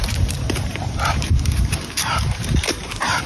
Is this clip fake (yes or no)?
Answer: yes